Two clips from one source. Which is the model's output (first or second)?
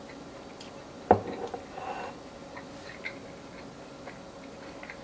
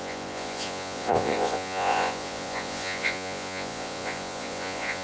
second